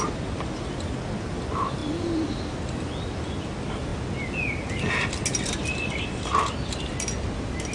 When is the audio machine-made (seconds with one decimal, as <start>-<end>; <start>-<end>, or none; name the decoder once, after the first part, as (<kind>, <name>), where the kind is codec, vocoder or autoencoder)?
none